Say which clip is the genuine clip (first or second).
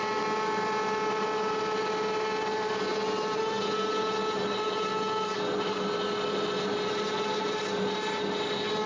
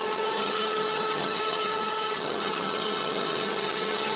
first